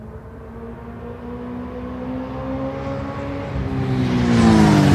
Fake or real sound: real